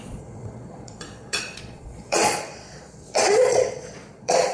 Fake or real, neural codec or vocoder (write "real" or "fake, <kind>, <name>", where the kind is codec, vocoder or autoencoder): fake, vocoder, Vocos